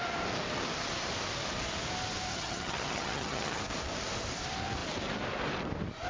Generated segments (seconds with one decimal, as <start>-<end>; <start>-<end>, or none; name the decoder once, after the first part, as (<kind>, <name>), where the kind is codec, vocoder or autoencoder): 2.3-3.6 (vocoder, HiFi-GAN)